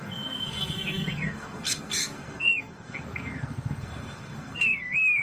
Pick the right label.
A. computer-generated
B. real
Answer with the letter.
A